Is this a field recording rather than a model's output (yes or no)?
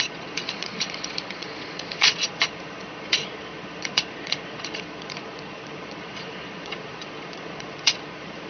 no